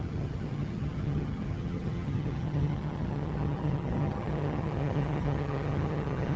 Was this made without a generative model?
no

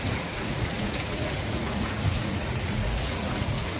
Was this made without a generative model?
no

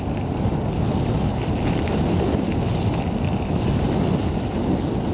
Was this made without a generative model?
yes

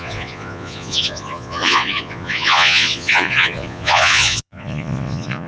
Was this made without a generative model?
no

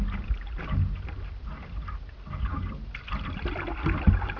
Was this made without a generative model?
yes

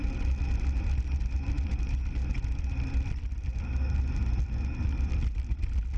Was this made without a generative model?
yes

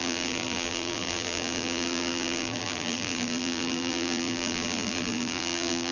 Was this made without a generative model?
no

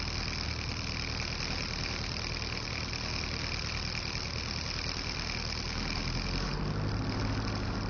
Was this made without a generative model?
yes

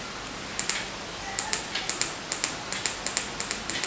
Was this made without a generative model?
yes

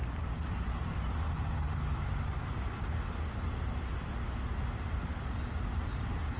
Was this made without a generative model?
yes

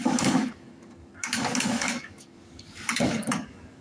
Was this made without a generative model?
no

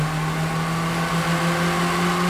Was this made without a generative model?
yes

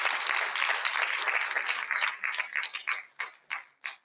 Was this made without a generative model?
yes